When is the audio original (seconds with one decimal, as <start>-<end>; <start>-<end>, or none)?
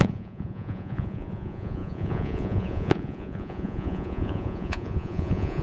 none